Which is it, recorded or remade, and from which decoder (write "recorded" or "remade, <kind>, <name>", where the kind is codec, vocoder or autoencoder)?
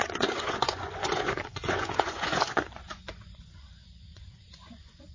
remade, vocoder, Vocos